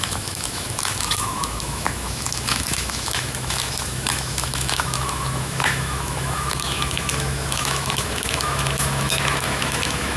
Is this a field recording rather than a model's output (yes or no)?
no